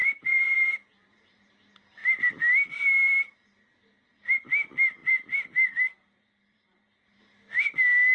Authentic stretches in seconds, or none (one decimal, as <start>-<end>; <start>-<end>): 1.5-5.0; 7.2-8.1